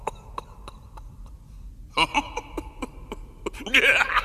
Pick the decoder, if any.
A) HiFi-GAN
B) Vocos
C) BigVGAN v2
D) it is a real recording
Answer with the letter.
D